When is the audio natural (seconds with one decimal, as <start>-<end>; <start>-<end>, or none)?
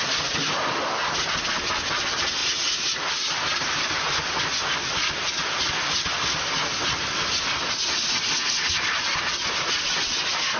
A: 0.0-10.6